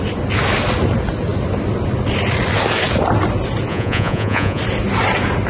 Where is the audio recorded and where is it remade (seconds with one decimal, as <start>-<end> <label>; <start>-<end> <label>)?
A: 0.0-3.7 recorded; 3.7-4.6 remade; 4.6-5.5 recorded